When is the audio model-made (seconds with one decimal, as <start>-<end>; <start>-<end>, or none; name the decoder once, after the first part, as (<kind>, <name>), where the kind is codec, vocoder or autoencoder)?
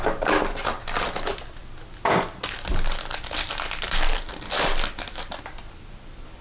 none